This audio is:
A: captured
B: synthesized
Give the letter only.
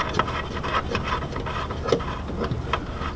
A